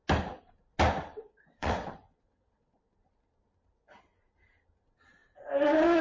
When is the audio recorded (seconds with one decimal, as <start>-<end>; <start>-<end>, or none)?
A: 0.0-1.1; 2.8-6.0